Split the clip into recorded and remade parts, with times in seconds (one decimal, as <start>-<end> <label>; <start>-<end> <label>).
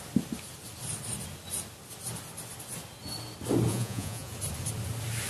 0.0-3.7 recorded; 3.7-4.3 remade; 4.3-5.3 recorded